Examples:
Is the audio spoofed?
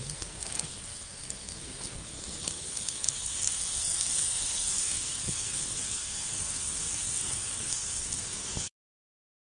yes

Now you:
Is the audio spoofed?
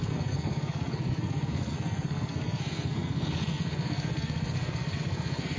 yes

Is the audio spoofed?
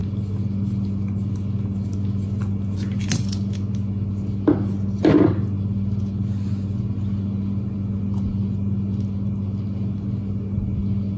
no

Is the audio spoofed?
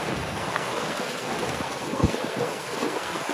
yes